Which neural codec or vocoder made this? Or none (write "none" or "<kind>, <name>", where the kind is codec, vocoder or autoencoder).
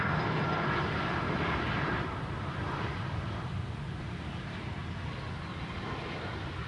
none